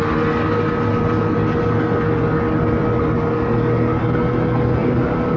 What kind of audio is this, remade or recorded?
recorded